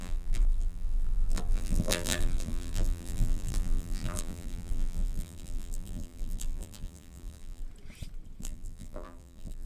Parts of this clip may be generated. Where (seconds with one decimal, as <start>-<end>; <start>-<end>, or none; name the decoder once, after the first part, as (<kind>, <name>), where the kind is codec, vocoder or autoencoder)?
0.0-7.6 (vocoder, BigVGAN v2); 8.4-9.7